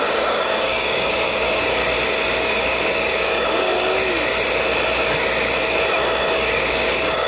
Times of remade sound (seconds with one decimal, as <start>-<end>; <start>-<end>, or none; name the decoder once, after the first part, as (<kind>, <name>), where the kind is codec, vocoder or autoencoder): 0.0-1.8 (codec, DAC); 2.4-3.7; 6.2-7.3

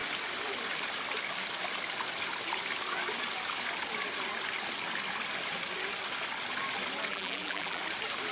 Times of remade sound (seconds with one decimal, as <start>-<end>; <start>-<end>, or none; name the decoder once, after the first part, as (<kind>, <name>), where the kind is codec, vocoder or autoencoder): 7.1-7.8 (vocoder, BigVGAN v2)

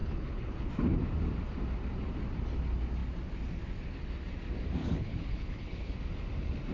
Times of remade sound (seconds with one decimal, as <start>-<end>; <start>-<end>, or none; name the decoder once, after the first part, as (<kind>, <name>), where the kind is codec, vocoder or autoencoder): 0.0-0.7 (codec, HILCodec); 4.8-6.0

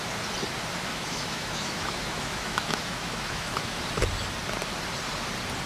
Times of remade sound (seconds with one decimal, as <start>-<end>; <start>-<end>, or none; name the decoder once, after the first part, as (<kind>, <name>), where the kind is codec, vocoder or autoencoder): 0.9-3.8 (autoencoder, DAC-VAE)